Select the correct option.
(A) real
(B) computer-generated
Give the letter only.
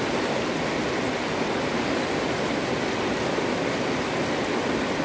A